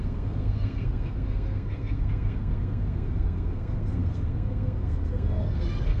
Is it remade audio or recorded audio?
remade